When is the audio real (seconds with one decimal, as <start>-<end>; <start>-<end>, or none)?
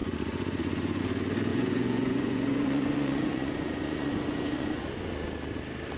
1.0-1.5; 5.1-6.0